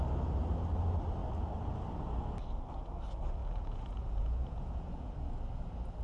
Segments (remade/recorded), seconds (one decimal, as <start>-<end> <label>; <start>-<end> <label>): 0.0-3.4 recorded; 3.4-5.1 remade; 5.1-6.0 recorded